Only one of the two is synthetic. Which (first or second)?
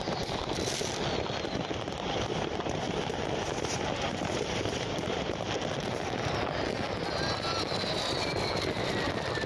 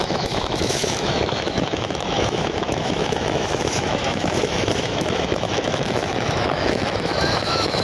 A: second